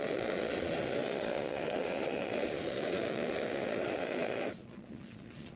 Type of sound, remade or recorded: remade